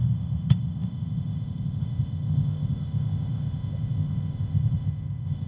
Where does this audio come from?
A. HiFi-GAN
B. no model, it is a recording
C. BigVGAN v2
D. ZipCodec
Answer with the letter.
D